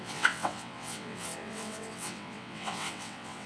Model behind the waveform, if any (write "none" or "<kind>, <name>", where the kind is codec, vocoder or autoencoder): vocoder, WaveNeXt